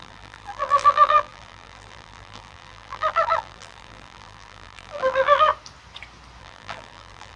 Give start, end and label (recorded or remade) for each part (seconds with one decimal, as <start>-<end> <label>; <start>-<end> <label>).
0.0-5.5 remade; 5.5-6.4 recorded; 6.4-7.4 remade